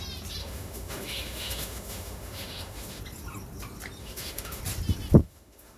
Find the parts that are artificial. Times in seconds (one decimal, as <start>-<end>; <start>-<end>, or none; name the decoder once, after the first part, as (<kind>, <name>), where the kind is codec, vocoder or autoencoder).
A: 0.4-3.0 (autoencoder, DAC-VAE); 4.0-4.6; 5.2-5.8